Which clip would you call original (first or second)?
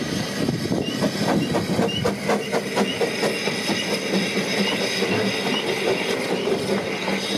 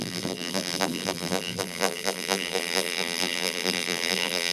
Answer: first